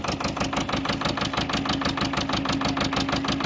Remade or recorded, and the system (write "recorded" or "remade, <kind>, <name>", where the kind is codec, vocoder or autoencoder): recorded